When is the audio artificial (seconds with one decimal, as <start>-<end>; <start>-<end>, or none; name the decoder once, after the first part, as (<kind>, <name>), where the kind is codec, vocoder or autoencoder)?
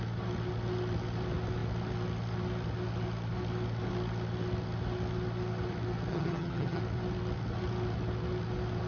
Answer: 6.1-6.8 (vocoder, HiFi-GAN)